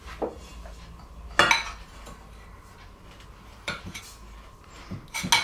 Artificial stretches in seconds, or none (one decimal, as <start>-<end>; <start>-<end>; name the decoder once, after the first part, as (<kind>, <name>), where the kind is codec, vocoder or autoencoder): 3.5-4.0 (vocoder, BigVGAN v2)